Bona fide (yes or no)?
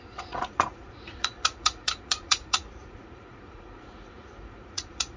no